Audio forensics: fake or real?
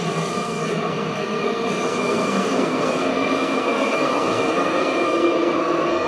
fake